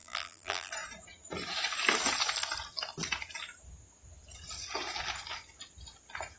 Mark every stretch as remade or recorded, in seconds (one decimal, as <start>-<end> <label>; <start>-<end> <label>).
0.0-0.7 remade; 0.7-6.4 recorded